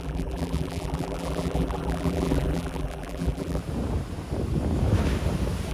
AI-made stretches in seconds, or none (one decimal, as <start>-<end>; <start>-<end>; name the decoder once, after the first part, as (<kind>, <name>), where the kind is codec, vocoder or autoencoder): 0.0-3.6 (vocoder, BigVGAN v2)